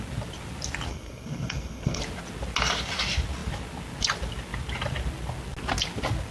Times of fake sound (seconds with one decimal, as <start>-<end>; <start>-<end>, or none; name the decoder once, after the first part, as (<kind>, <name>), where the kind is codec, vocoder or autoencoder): 0.9-2.0 (codec, SNAC)